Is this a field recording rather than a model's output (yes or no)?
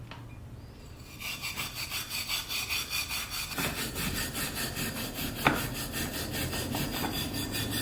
yes